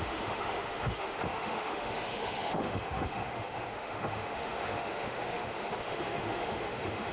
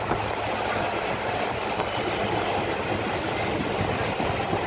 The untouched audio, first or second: second